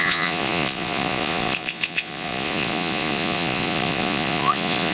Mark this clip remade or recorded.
remade